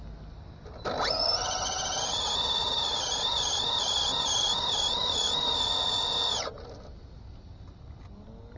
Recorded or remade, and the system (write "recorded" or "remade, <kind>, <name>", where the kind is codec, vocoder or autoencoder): recorded